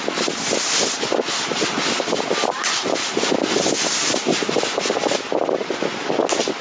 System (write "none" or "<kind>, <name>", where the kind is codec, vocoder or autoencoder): none